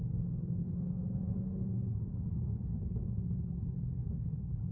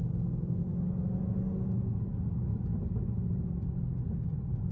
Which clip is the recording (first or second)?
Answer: second